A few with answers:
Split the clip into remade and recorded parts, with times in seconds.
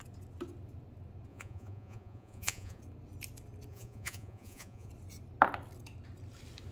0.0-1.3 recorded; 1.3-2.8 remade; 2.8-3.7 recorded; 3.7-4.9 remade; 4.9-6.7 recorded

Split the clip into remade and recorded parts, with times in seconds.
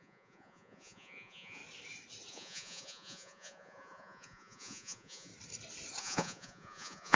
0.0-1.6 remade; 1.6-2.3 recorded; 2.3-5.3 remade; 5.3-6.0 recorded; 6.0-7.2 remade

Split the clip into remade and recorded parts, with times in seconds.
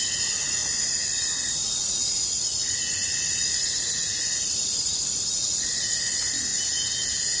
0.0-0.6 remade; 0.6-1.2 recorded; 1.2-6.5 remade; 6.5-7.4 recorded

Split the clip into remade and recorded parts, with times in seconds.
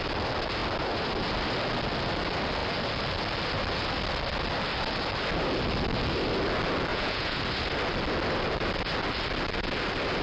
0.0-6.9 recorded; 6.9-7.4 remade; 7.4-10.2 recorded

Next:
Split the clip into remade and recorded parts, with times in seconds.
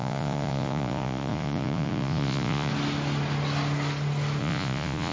0.0-2.7 remade; 2.7-4.4 recorded; 4.4-5.1 remade